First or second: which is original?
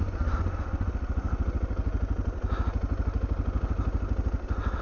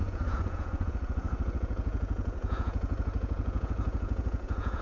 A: first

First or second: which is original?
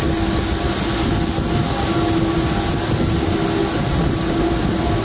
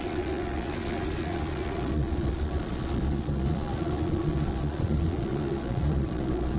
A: first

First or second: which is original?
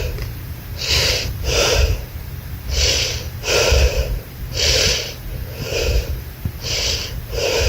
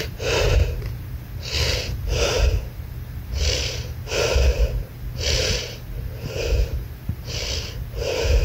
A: second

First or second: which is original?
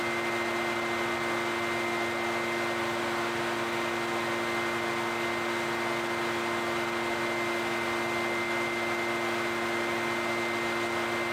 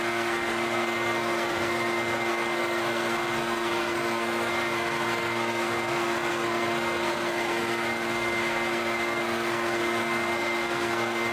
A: first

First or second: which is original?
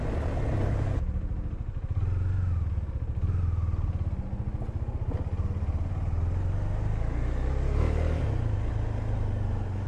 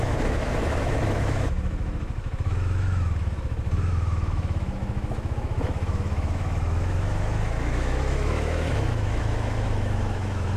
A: first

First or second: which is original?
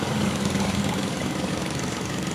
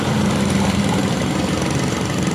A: second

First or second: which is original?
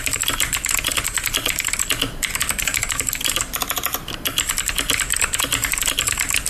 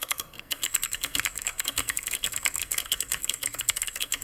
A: first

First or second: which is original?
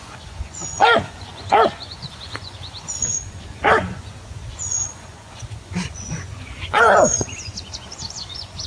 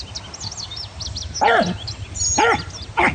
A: second